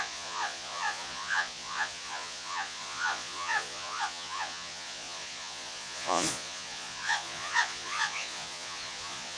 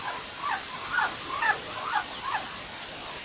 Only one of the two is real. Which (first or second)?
second